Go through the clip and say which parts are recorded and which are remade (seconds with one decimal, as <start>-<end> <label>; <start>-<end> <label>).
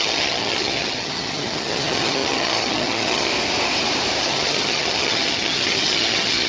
0.0-3.3 remade; 3.3-4.2 recorded; 4.2-6.5 remade